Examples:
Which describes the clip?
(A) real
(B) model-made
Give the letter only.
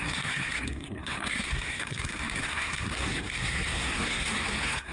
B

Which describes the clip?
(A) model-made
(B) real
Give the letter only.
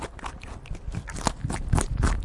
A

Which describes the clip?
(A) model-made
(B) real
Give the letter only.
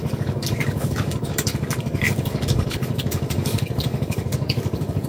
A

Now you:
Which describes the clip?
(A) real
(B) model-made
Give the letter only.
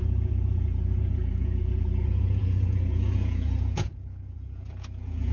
B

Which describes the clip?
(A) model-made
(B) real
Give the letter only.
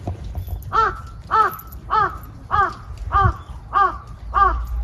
B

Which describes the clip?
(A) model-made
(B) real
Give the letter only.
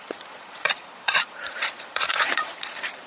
A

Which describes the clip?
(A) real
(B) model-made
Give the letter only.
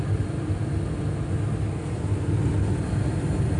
A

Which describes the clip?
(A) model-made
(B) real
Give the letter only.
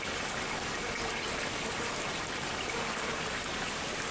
B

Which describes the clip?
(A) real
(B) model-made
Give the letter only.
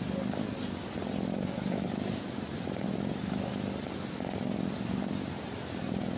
A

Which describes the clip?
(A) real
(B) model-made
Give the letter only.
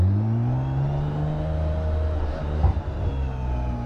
A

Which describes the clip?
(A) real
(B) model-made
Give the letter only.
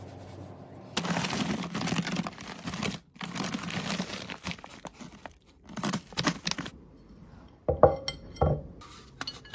A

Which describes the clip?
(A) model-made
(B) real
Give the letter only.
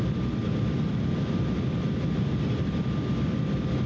B